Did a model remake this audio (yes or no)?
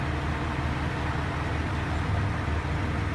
no